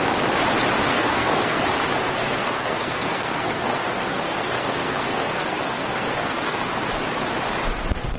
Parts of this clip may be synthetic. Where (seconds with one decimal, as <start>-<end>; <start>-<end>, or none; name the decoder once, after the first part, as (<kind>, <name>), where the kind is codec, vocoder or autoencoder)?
0.9-1.6 (codec, SNAC); 2.2-6.6